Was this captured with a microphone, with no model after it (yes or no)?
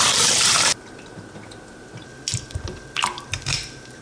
no